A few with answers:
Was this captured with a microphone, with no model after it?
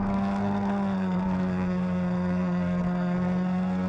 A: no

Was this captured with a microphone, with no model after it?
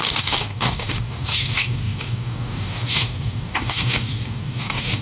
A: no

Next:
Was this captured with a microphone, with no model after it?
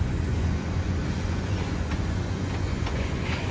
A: no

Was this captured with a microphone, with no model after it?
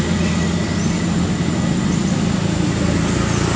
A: yes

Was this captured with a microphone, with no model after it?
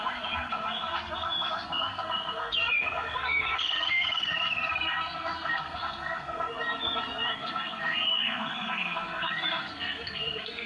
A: no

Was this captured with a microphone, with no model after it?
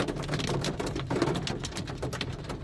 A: yes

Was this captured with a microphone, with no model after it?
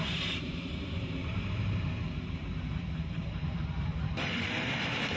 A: no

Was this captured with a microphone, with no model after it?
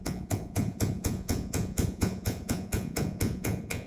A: no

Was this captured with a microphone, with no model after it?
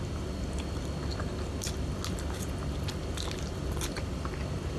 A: yes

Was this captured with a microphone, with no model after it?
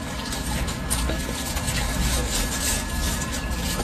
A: no